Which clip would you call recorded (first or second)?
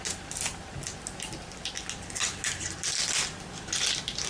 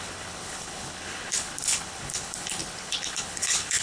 first